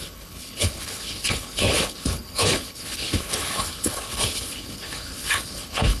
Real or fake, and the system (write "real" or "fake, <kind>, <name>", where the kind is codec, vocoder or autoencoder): fake, codec, HILCodec